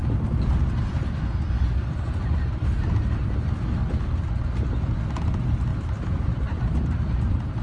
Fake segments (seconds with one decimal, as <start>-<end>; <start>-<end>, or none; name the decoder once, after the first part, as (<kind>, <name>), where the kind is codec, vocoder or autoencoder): 5.7-7.6 (vocoder, BigVGAN v2)